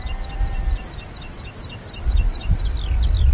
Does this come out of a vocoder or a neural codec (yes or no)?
no